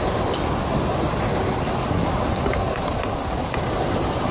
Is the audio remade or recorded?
recorded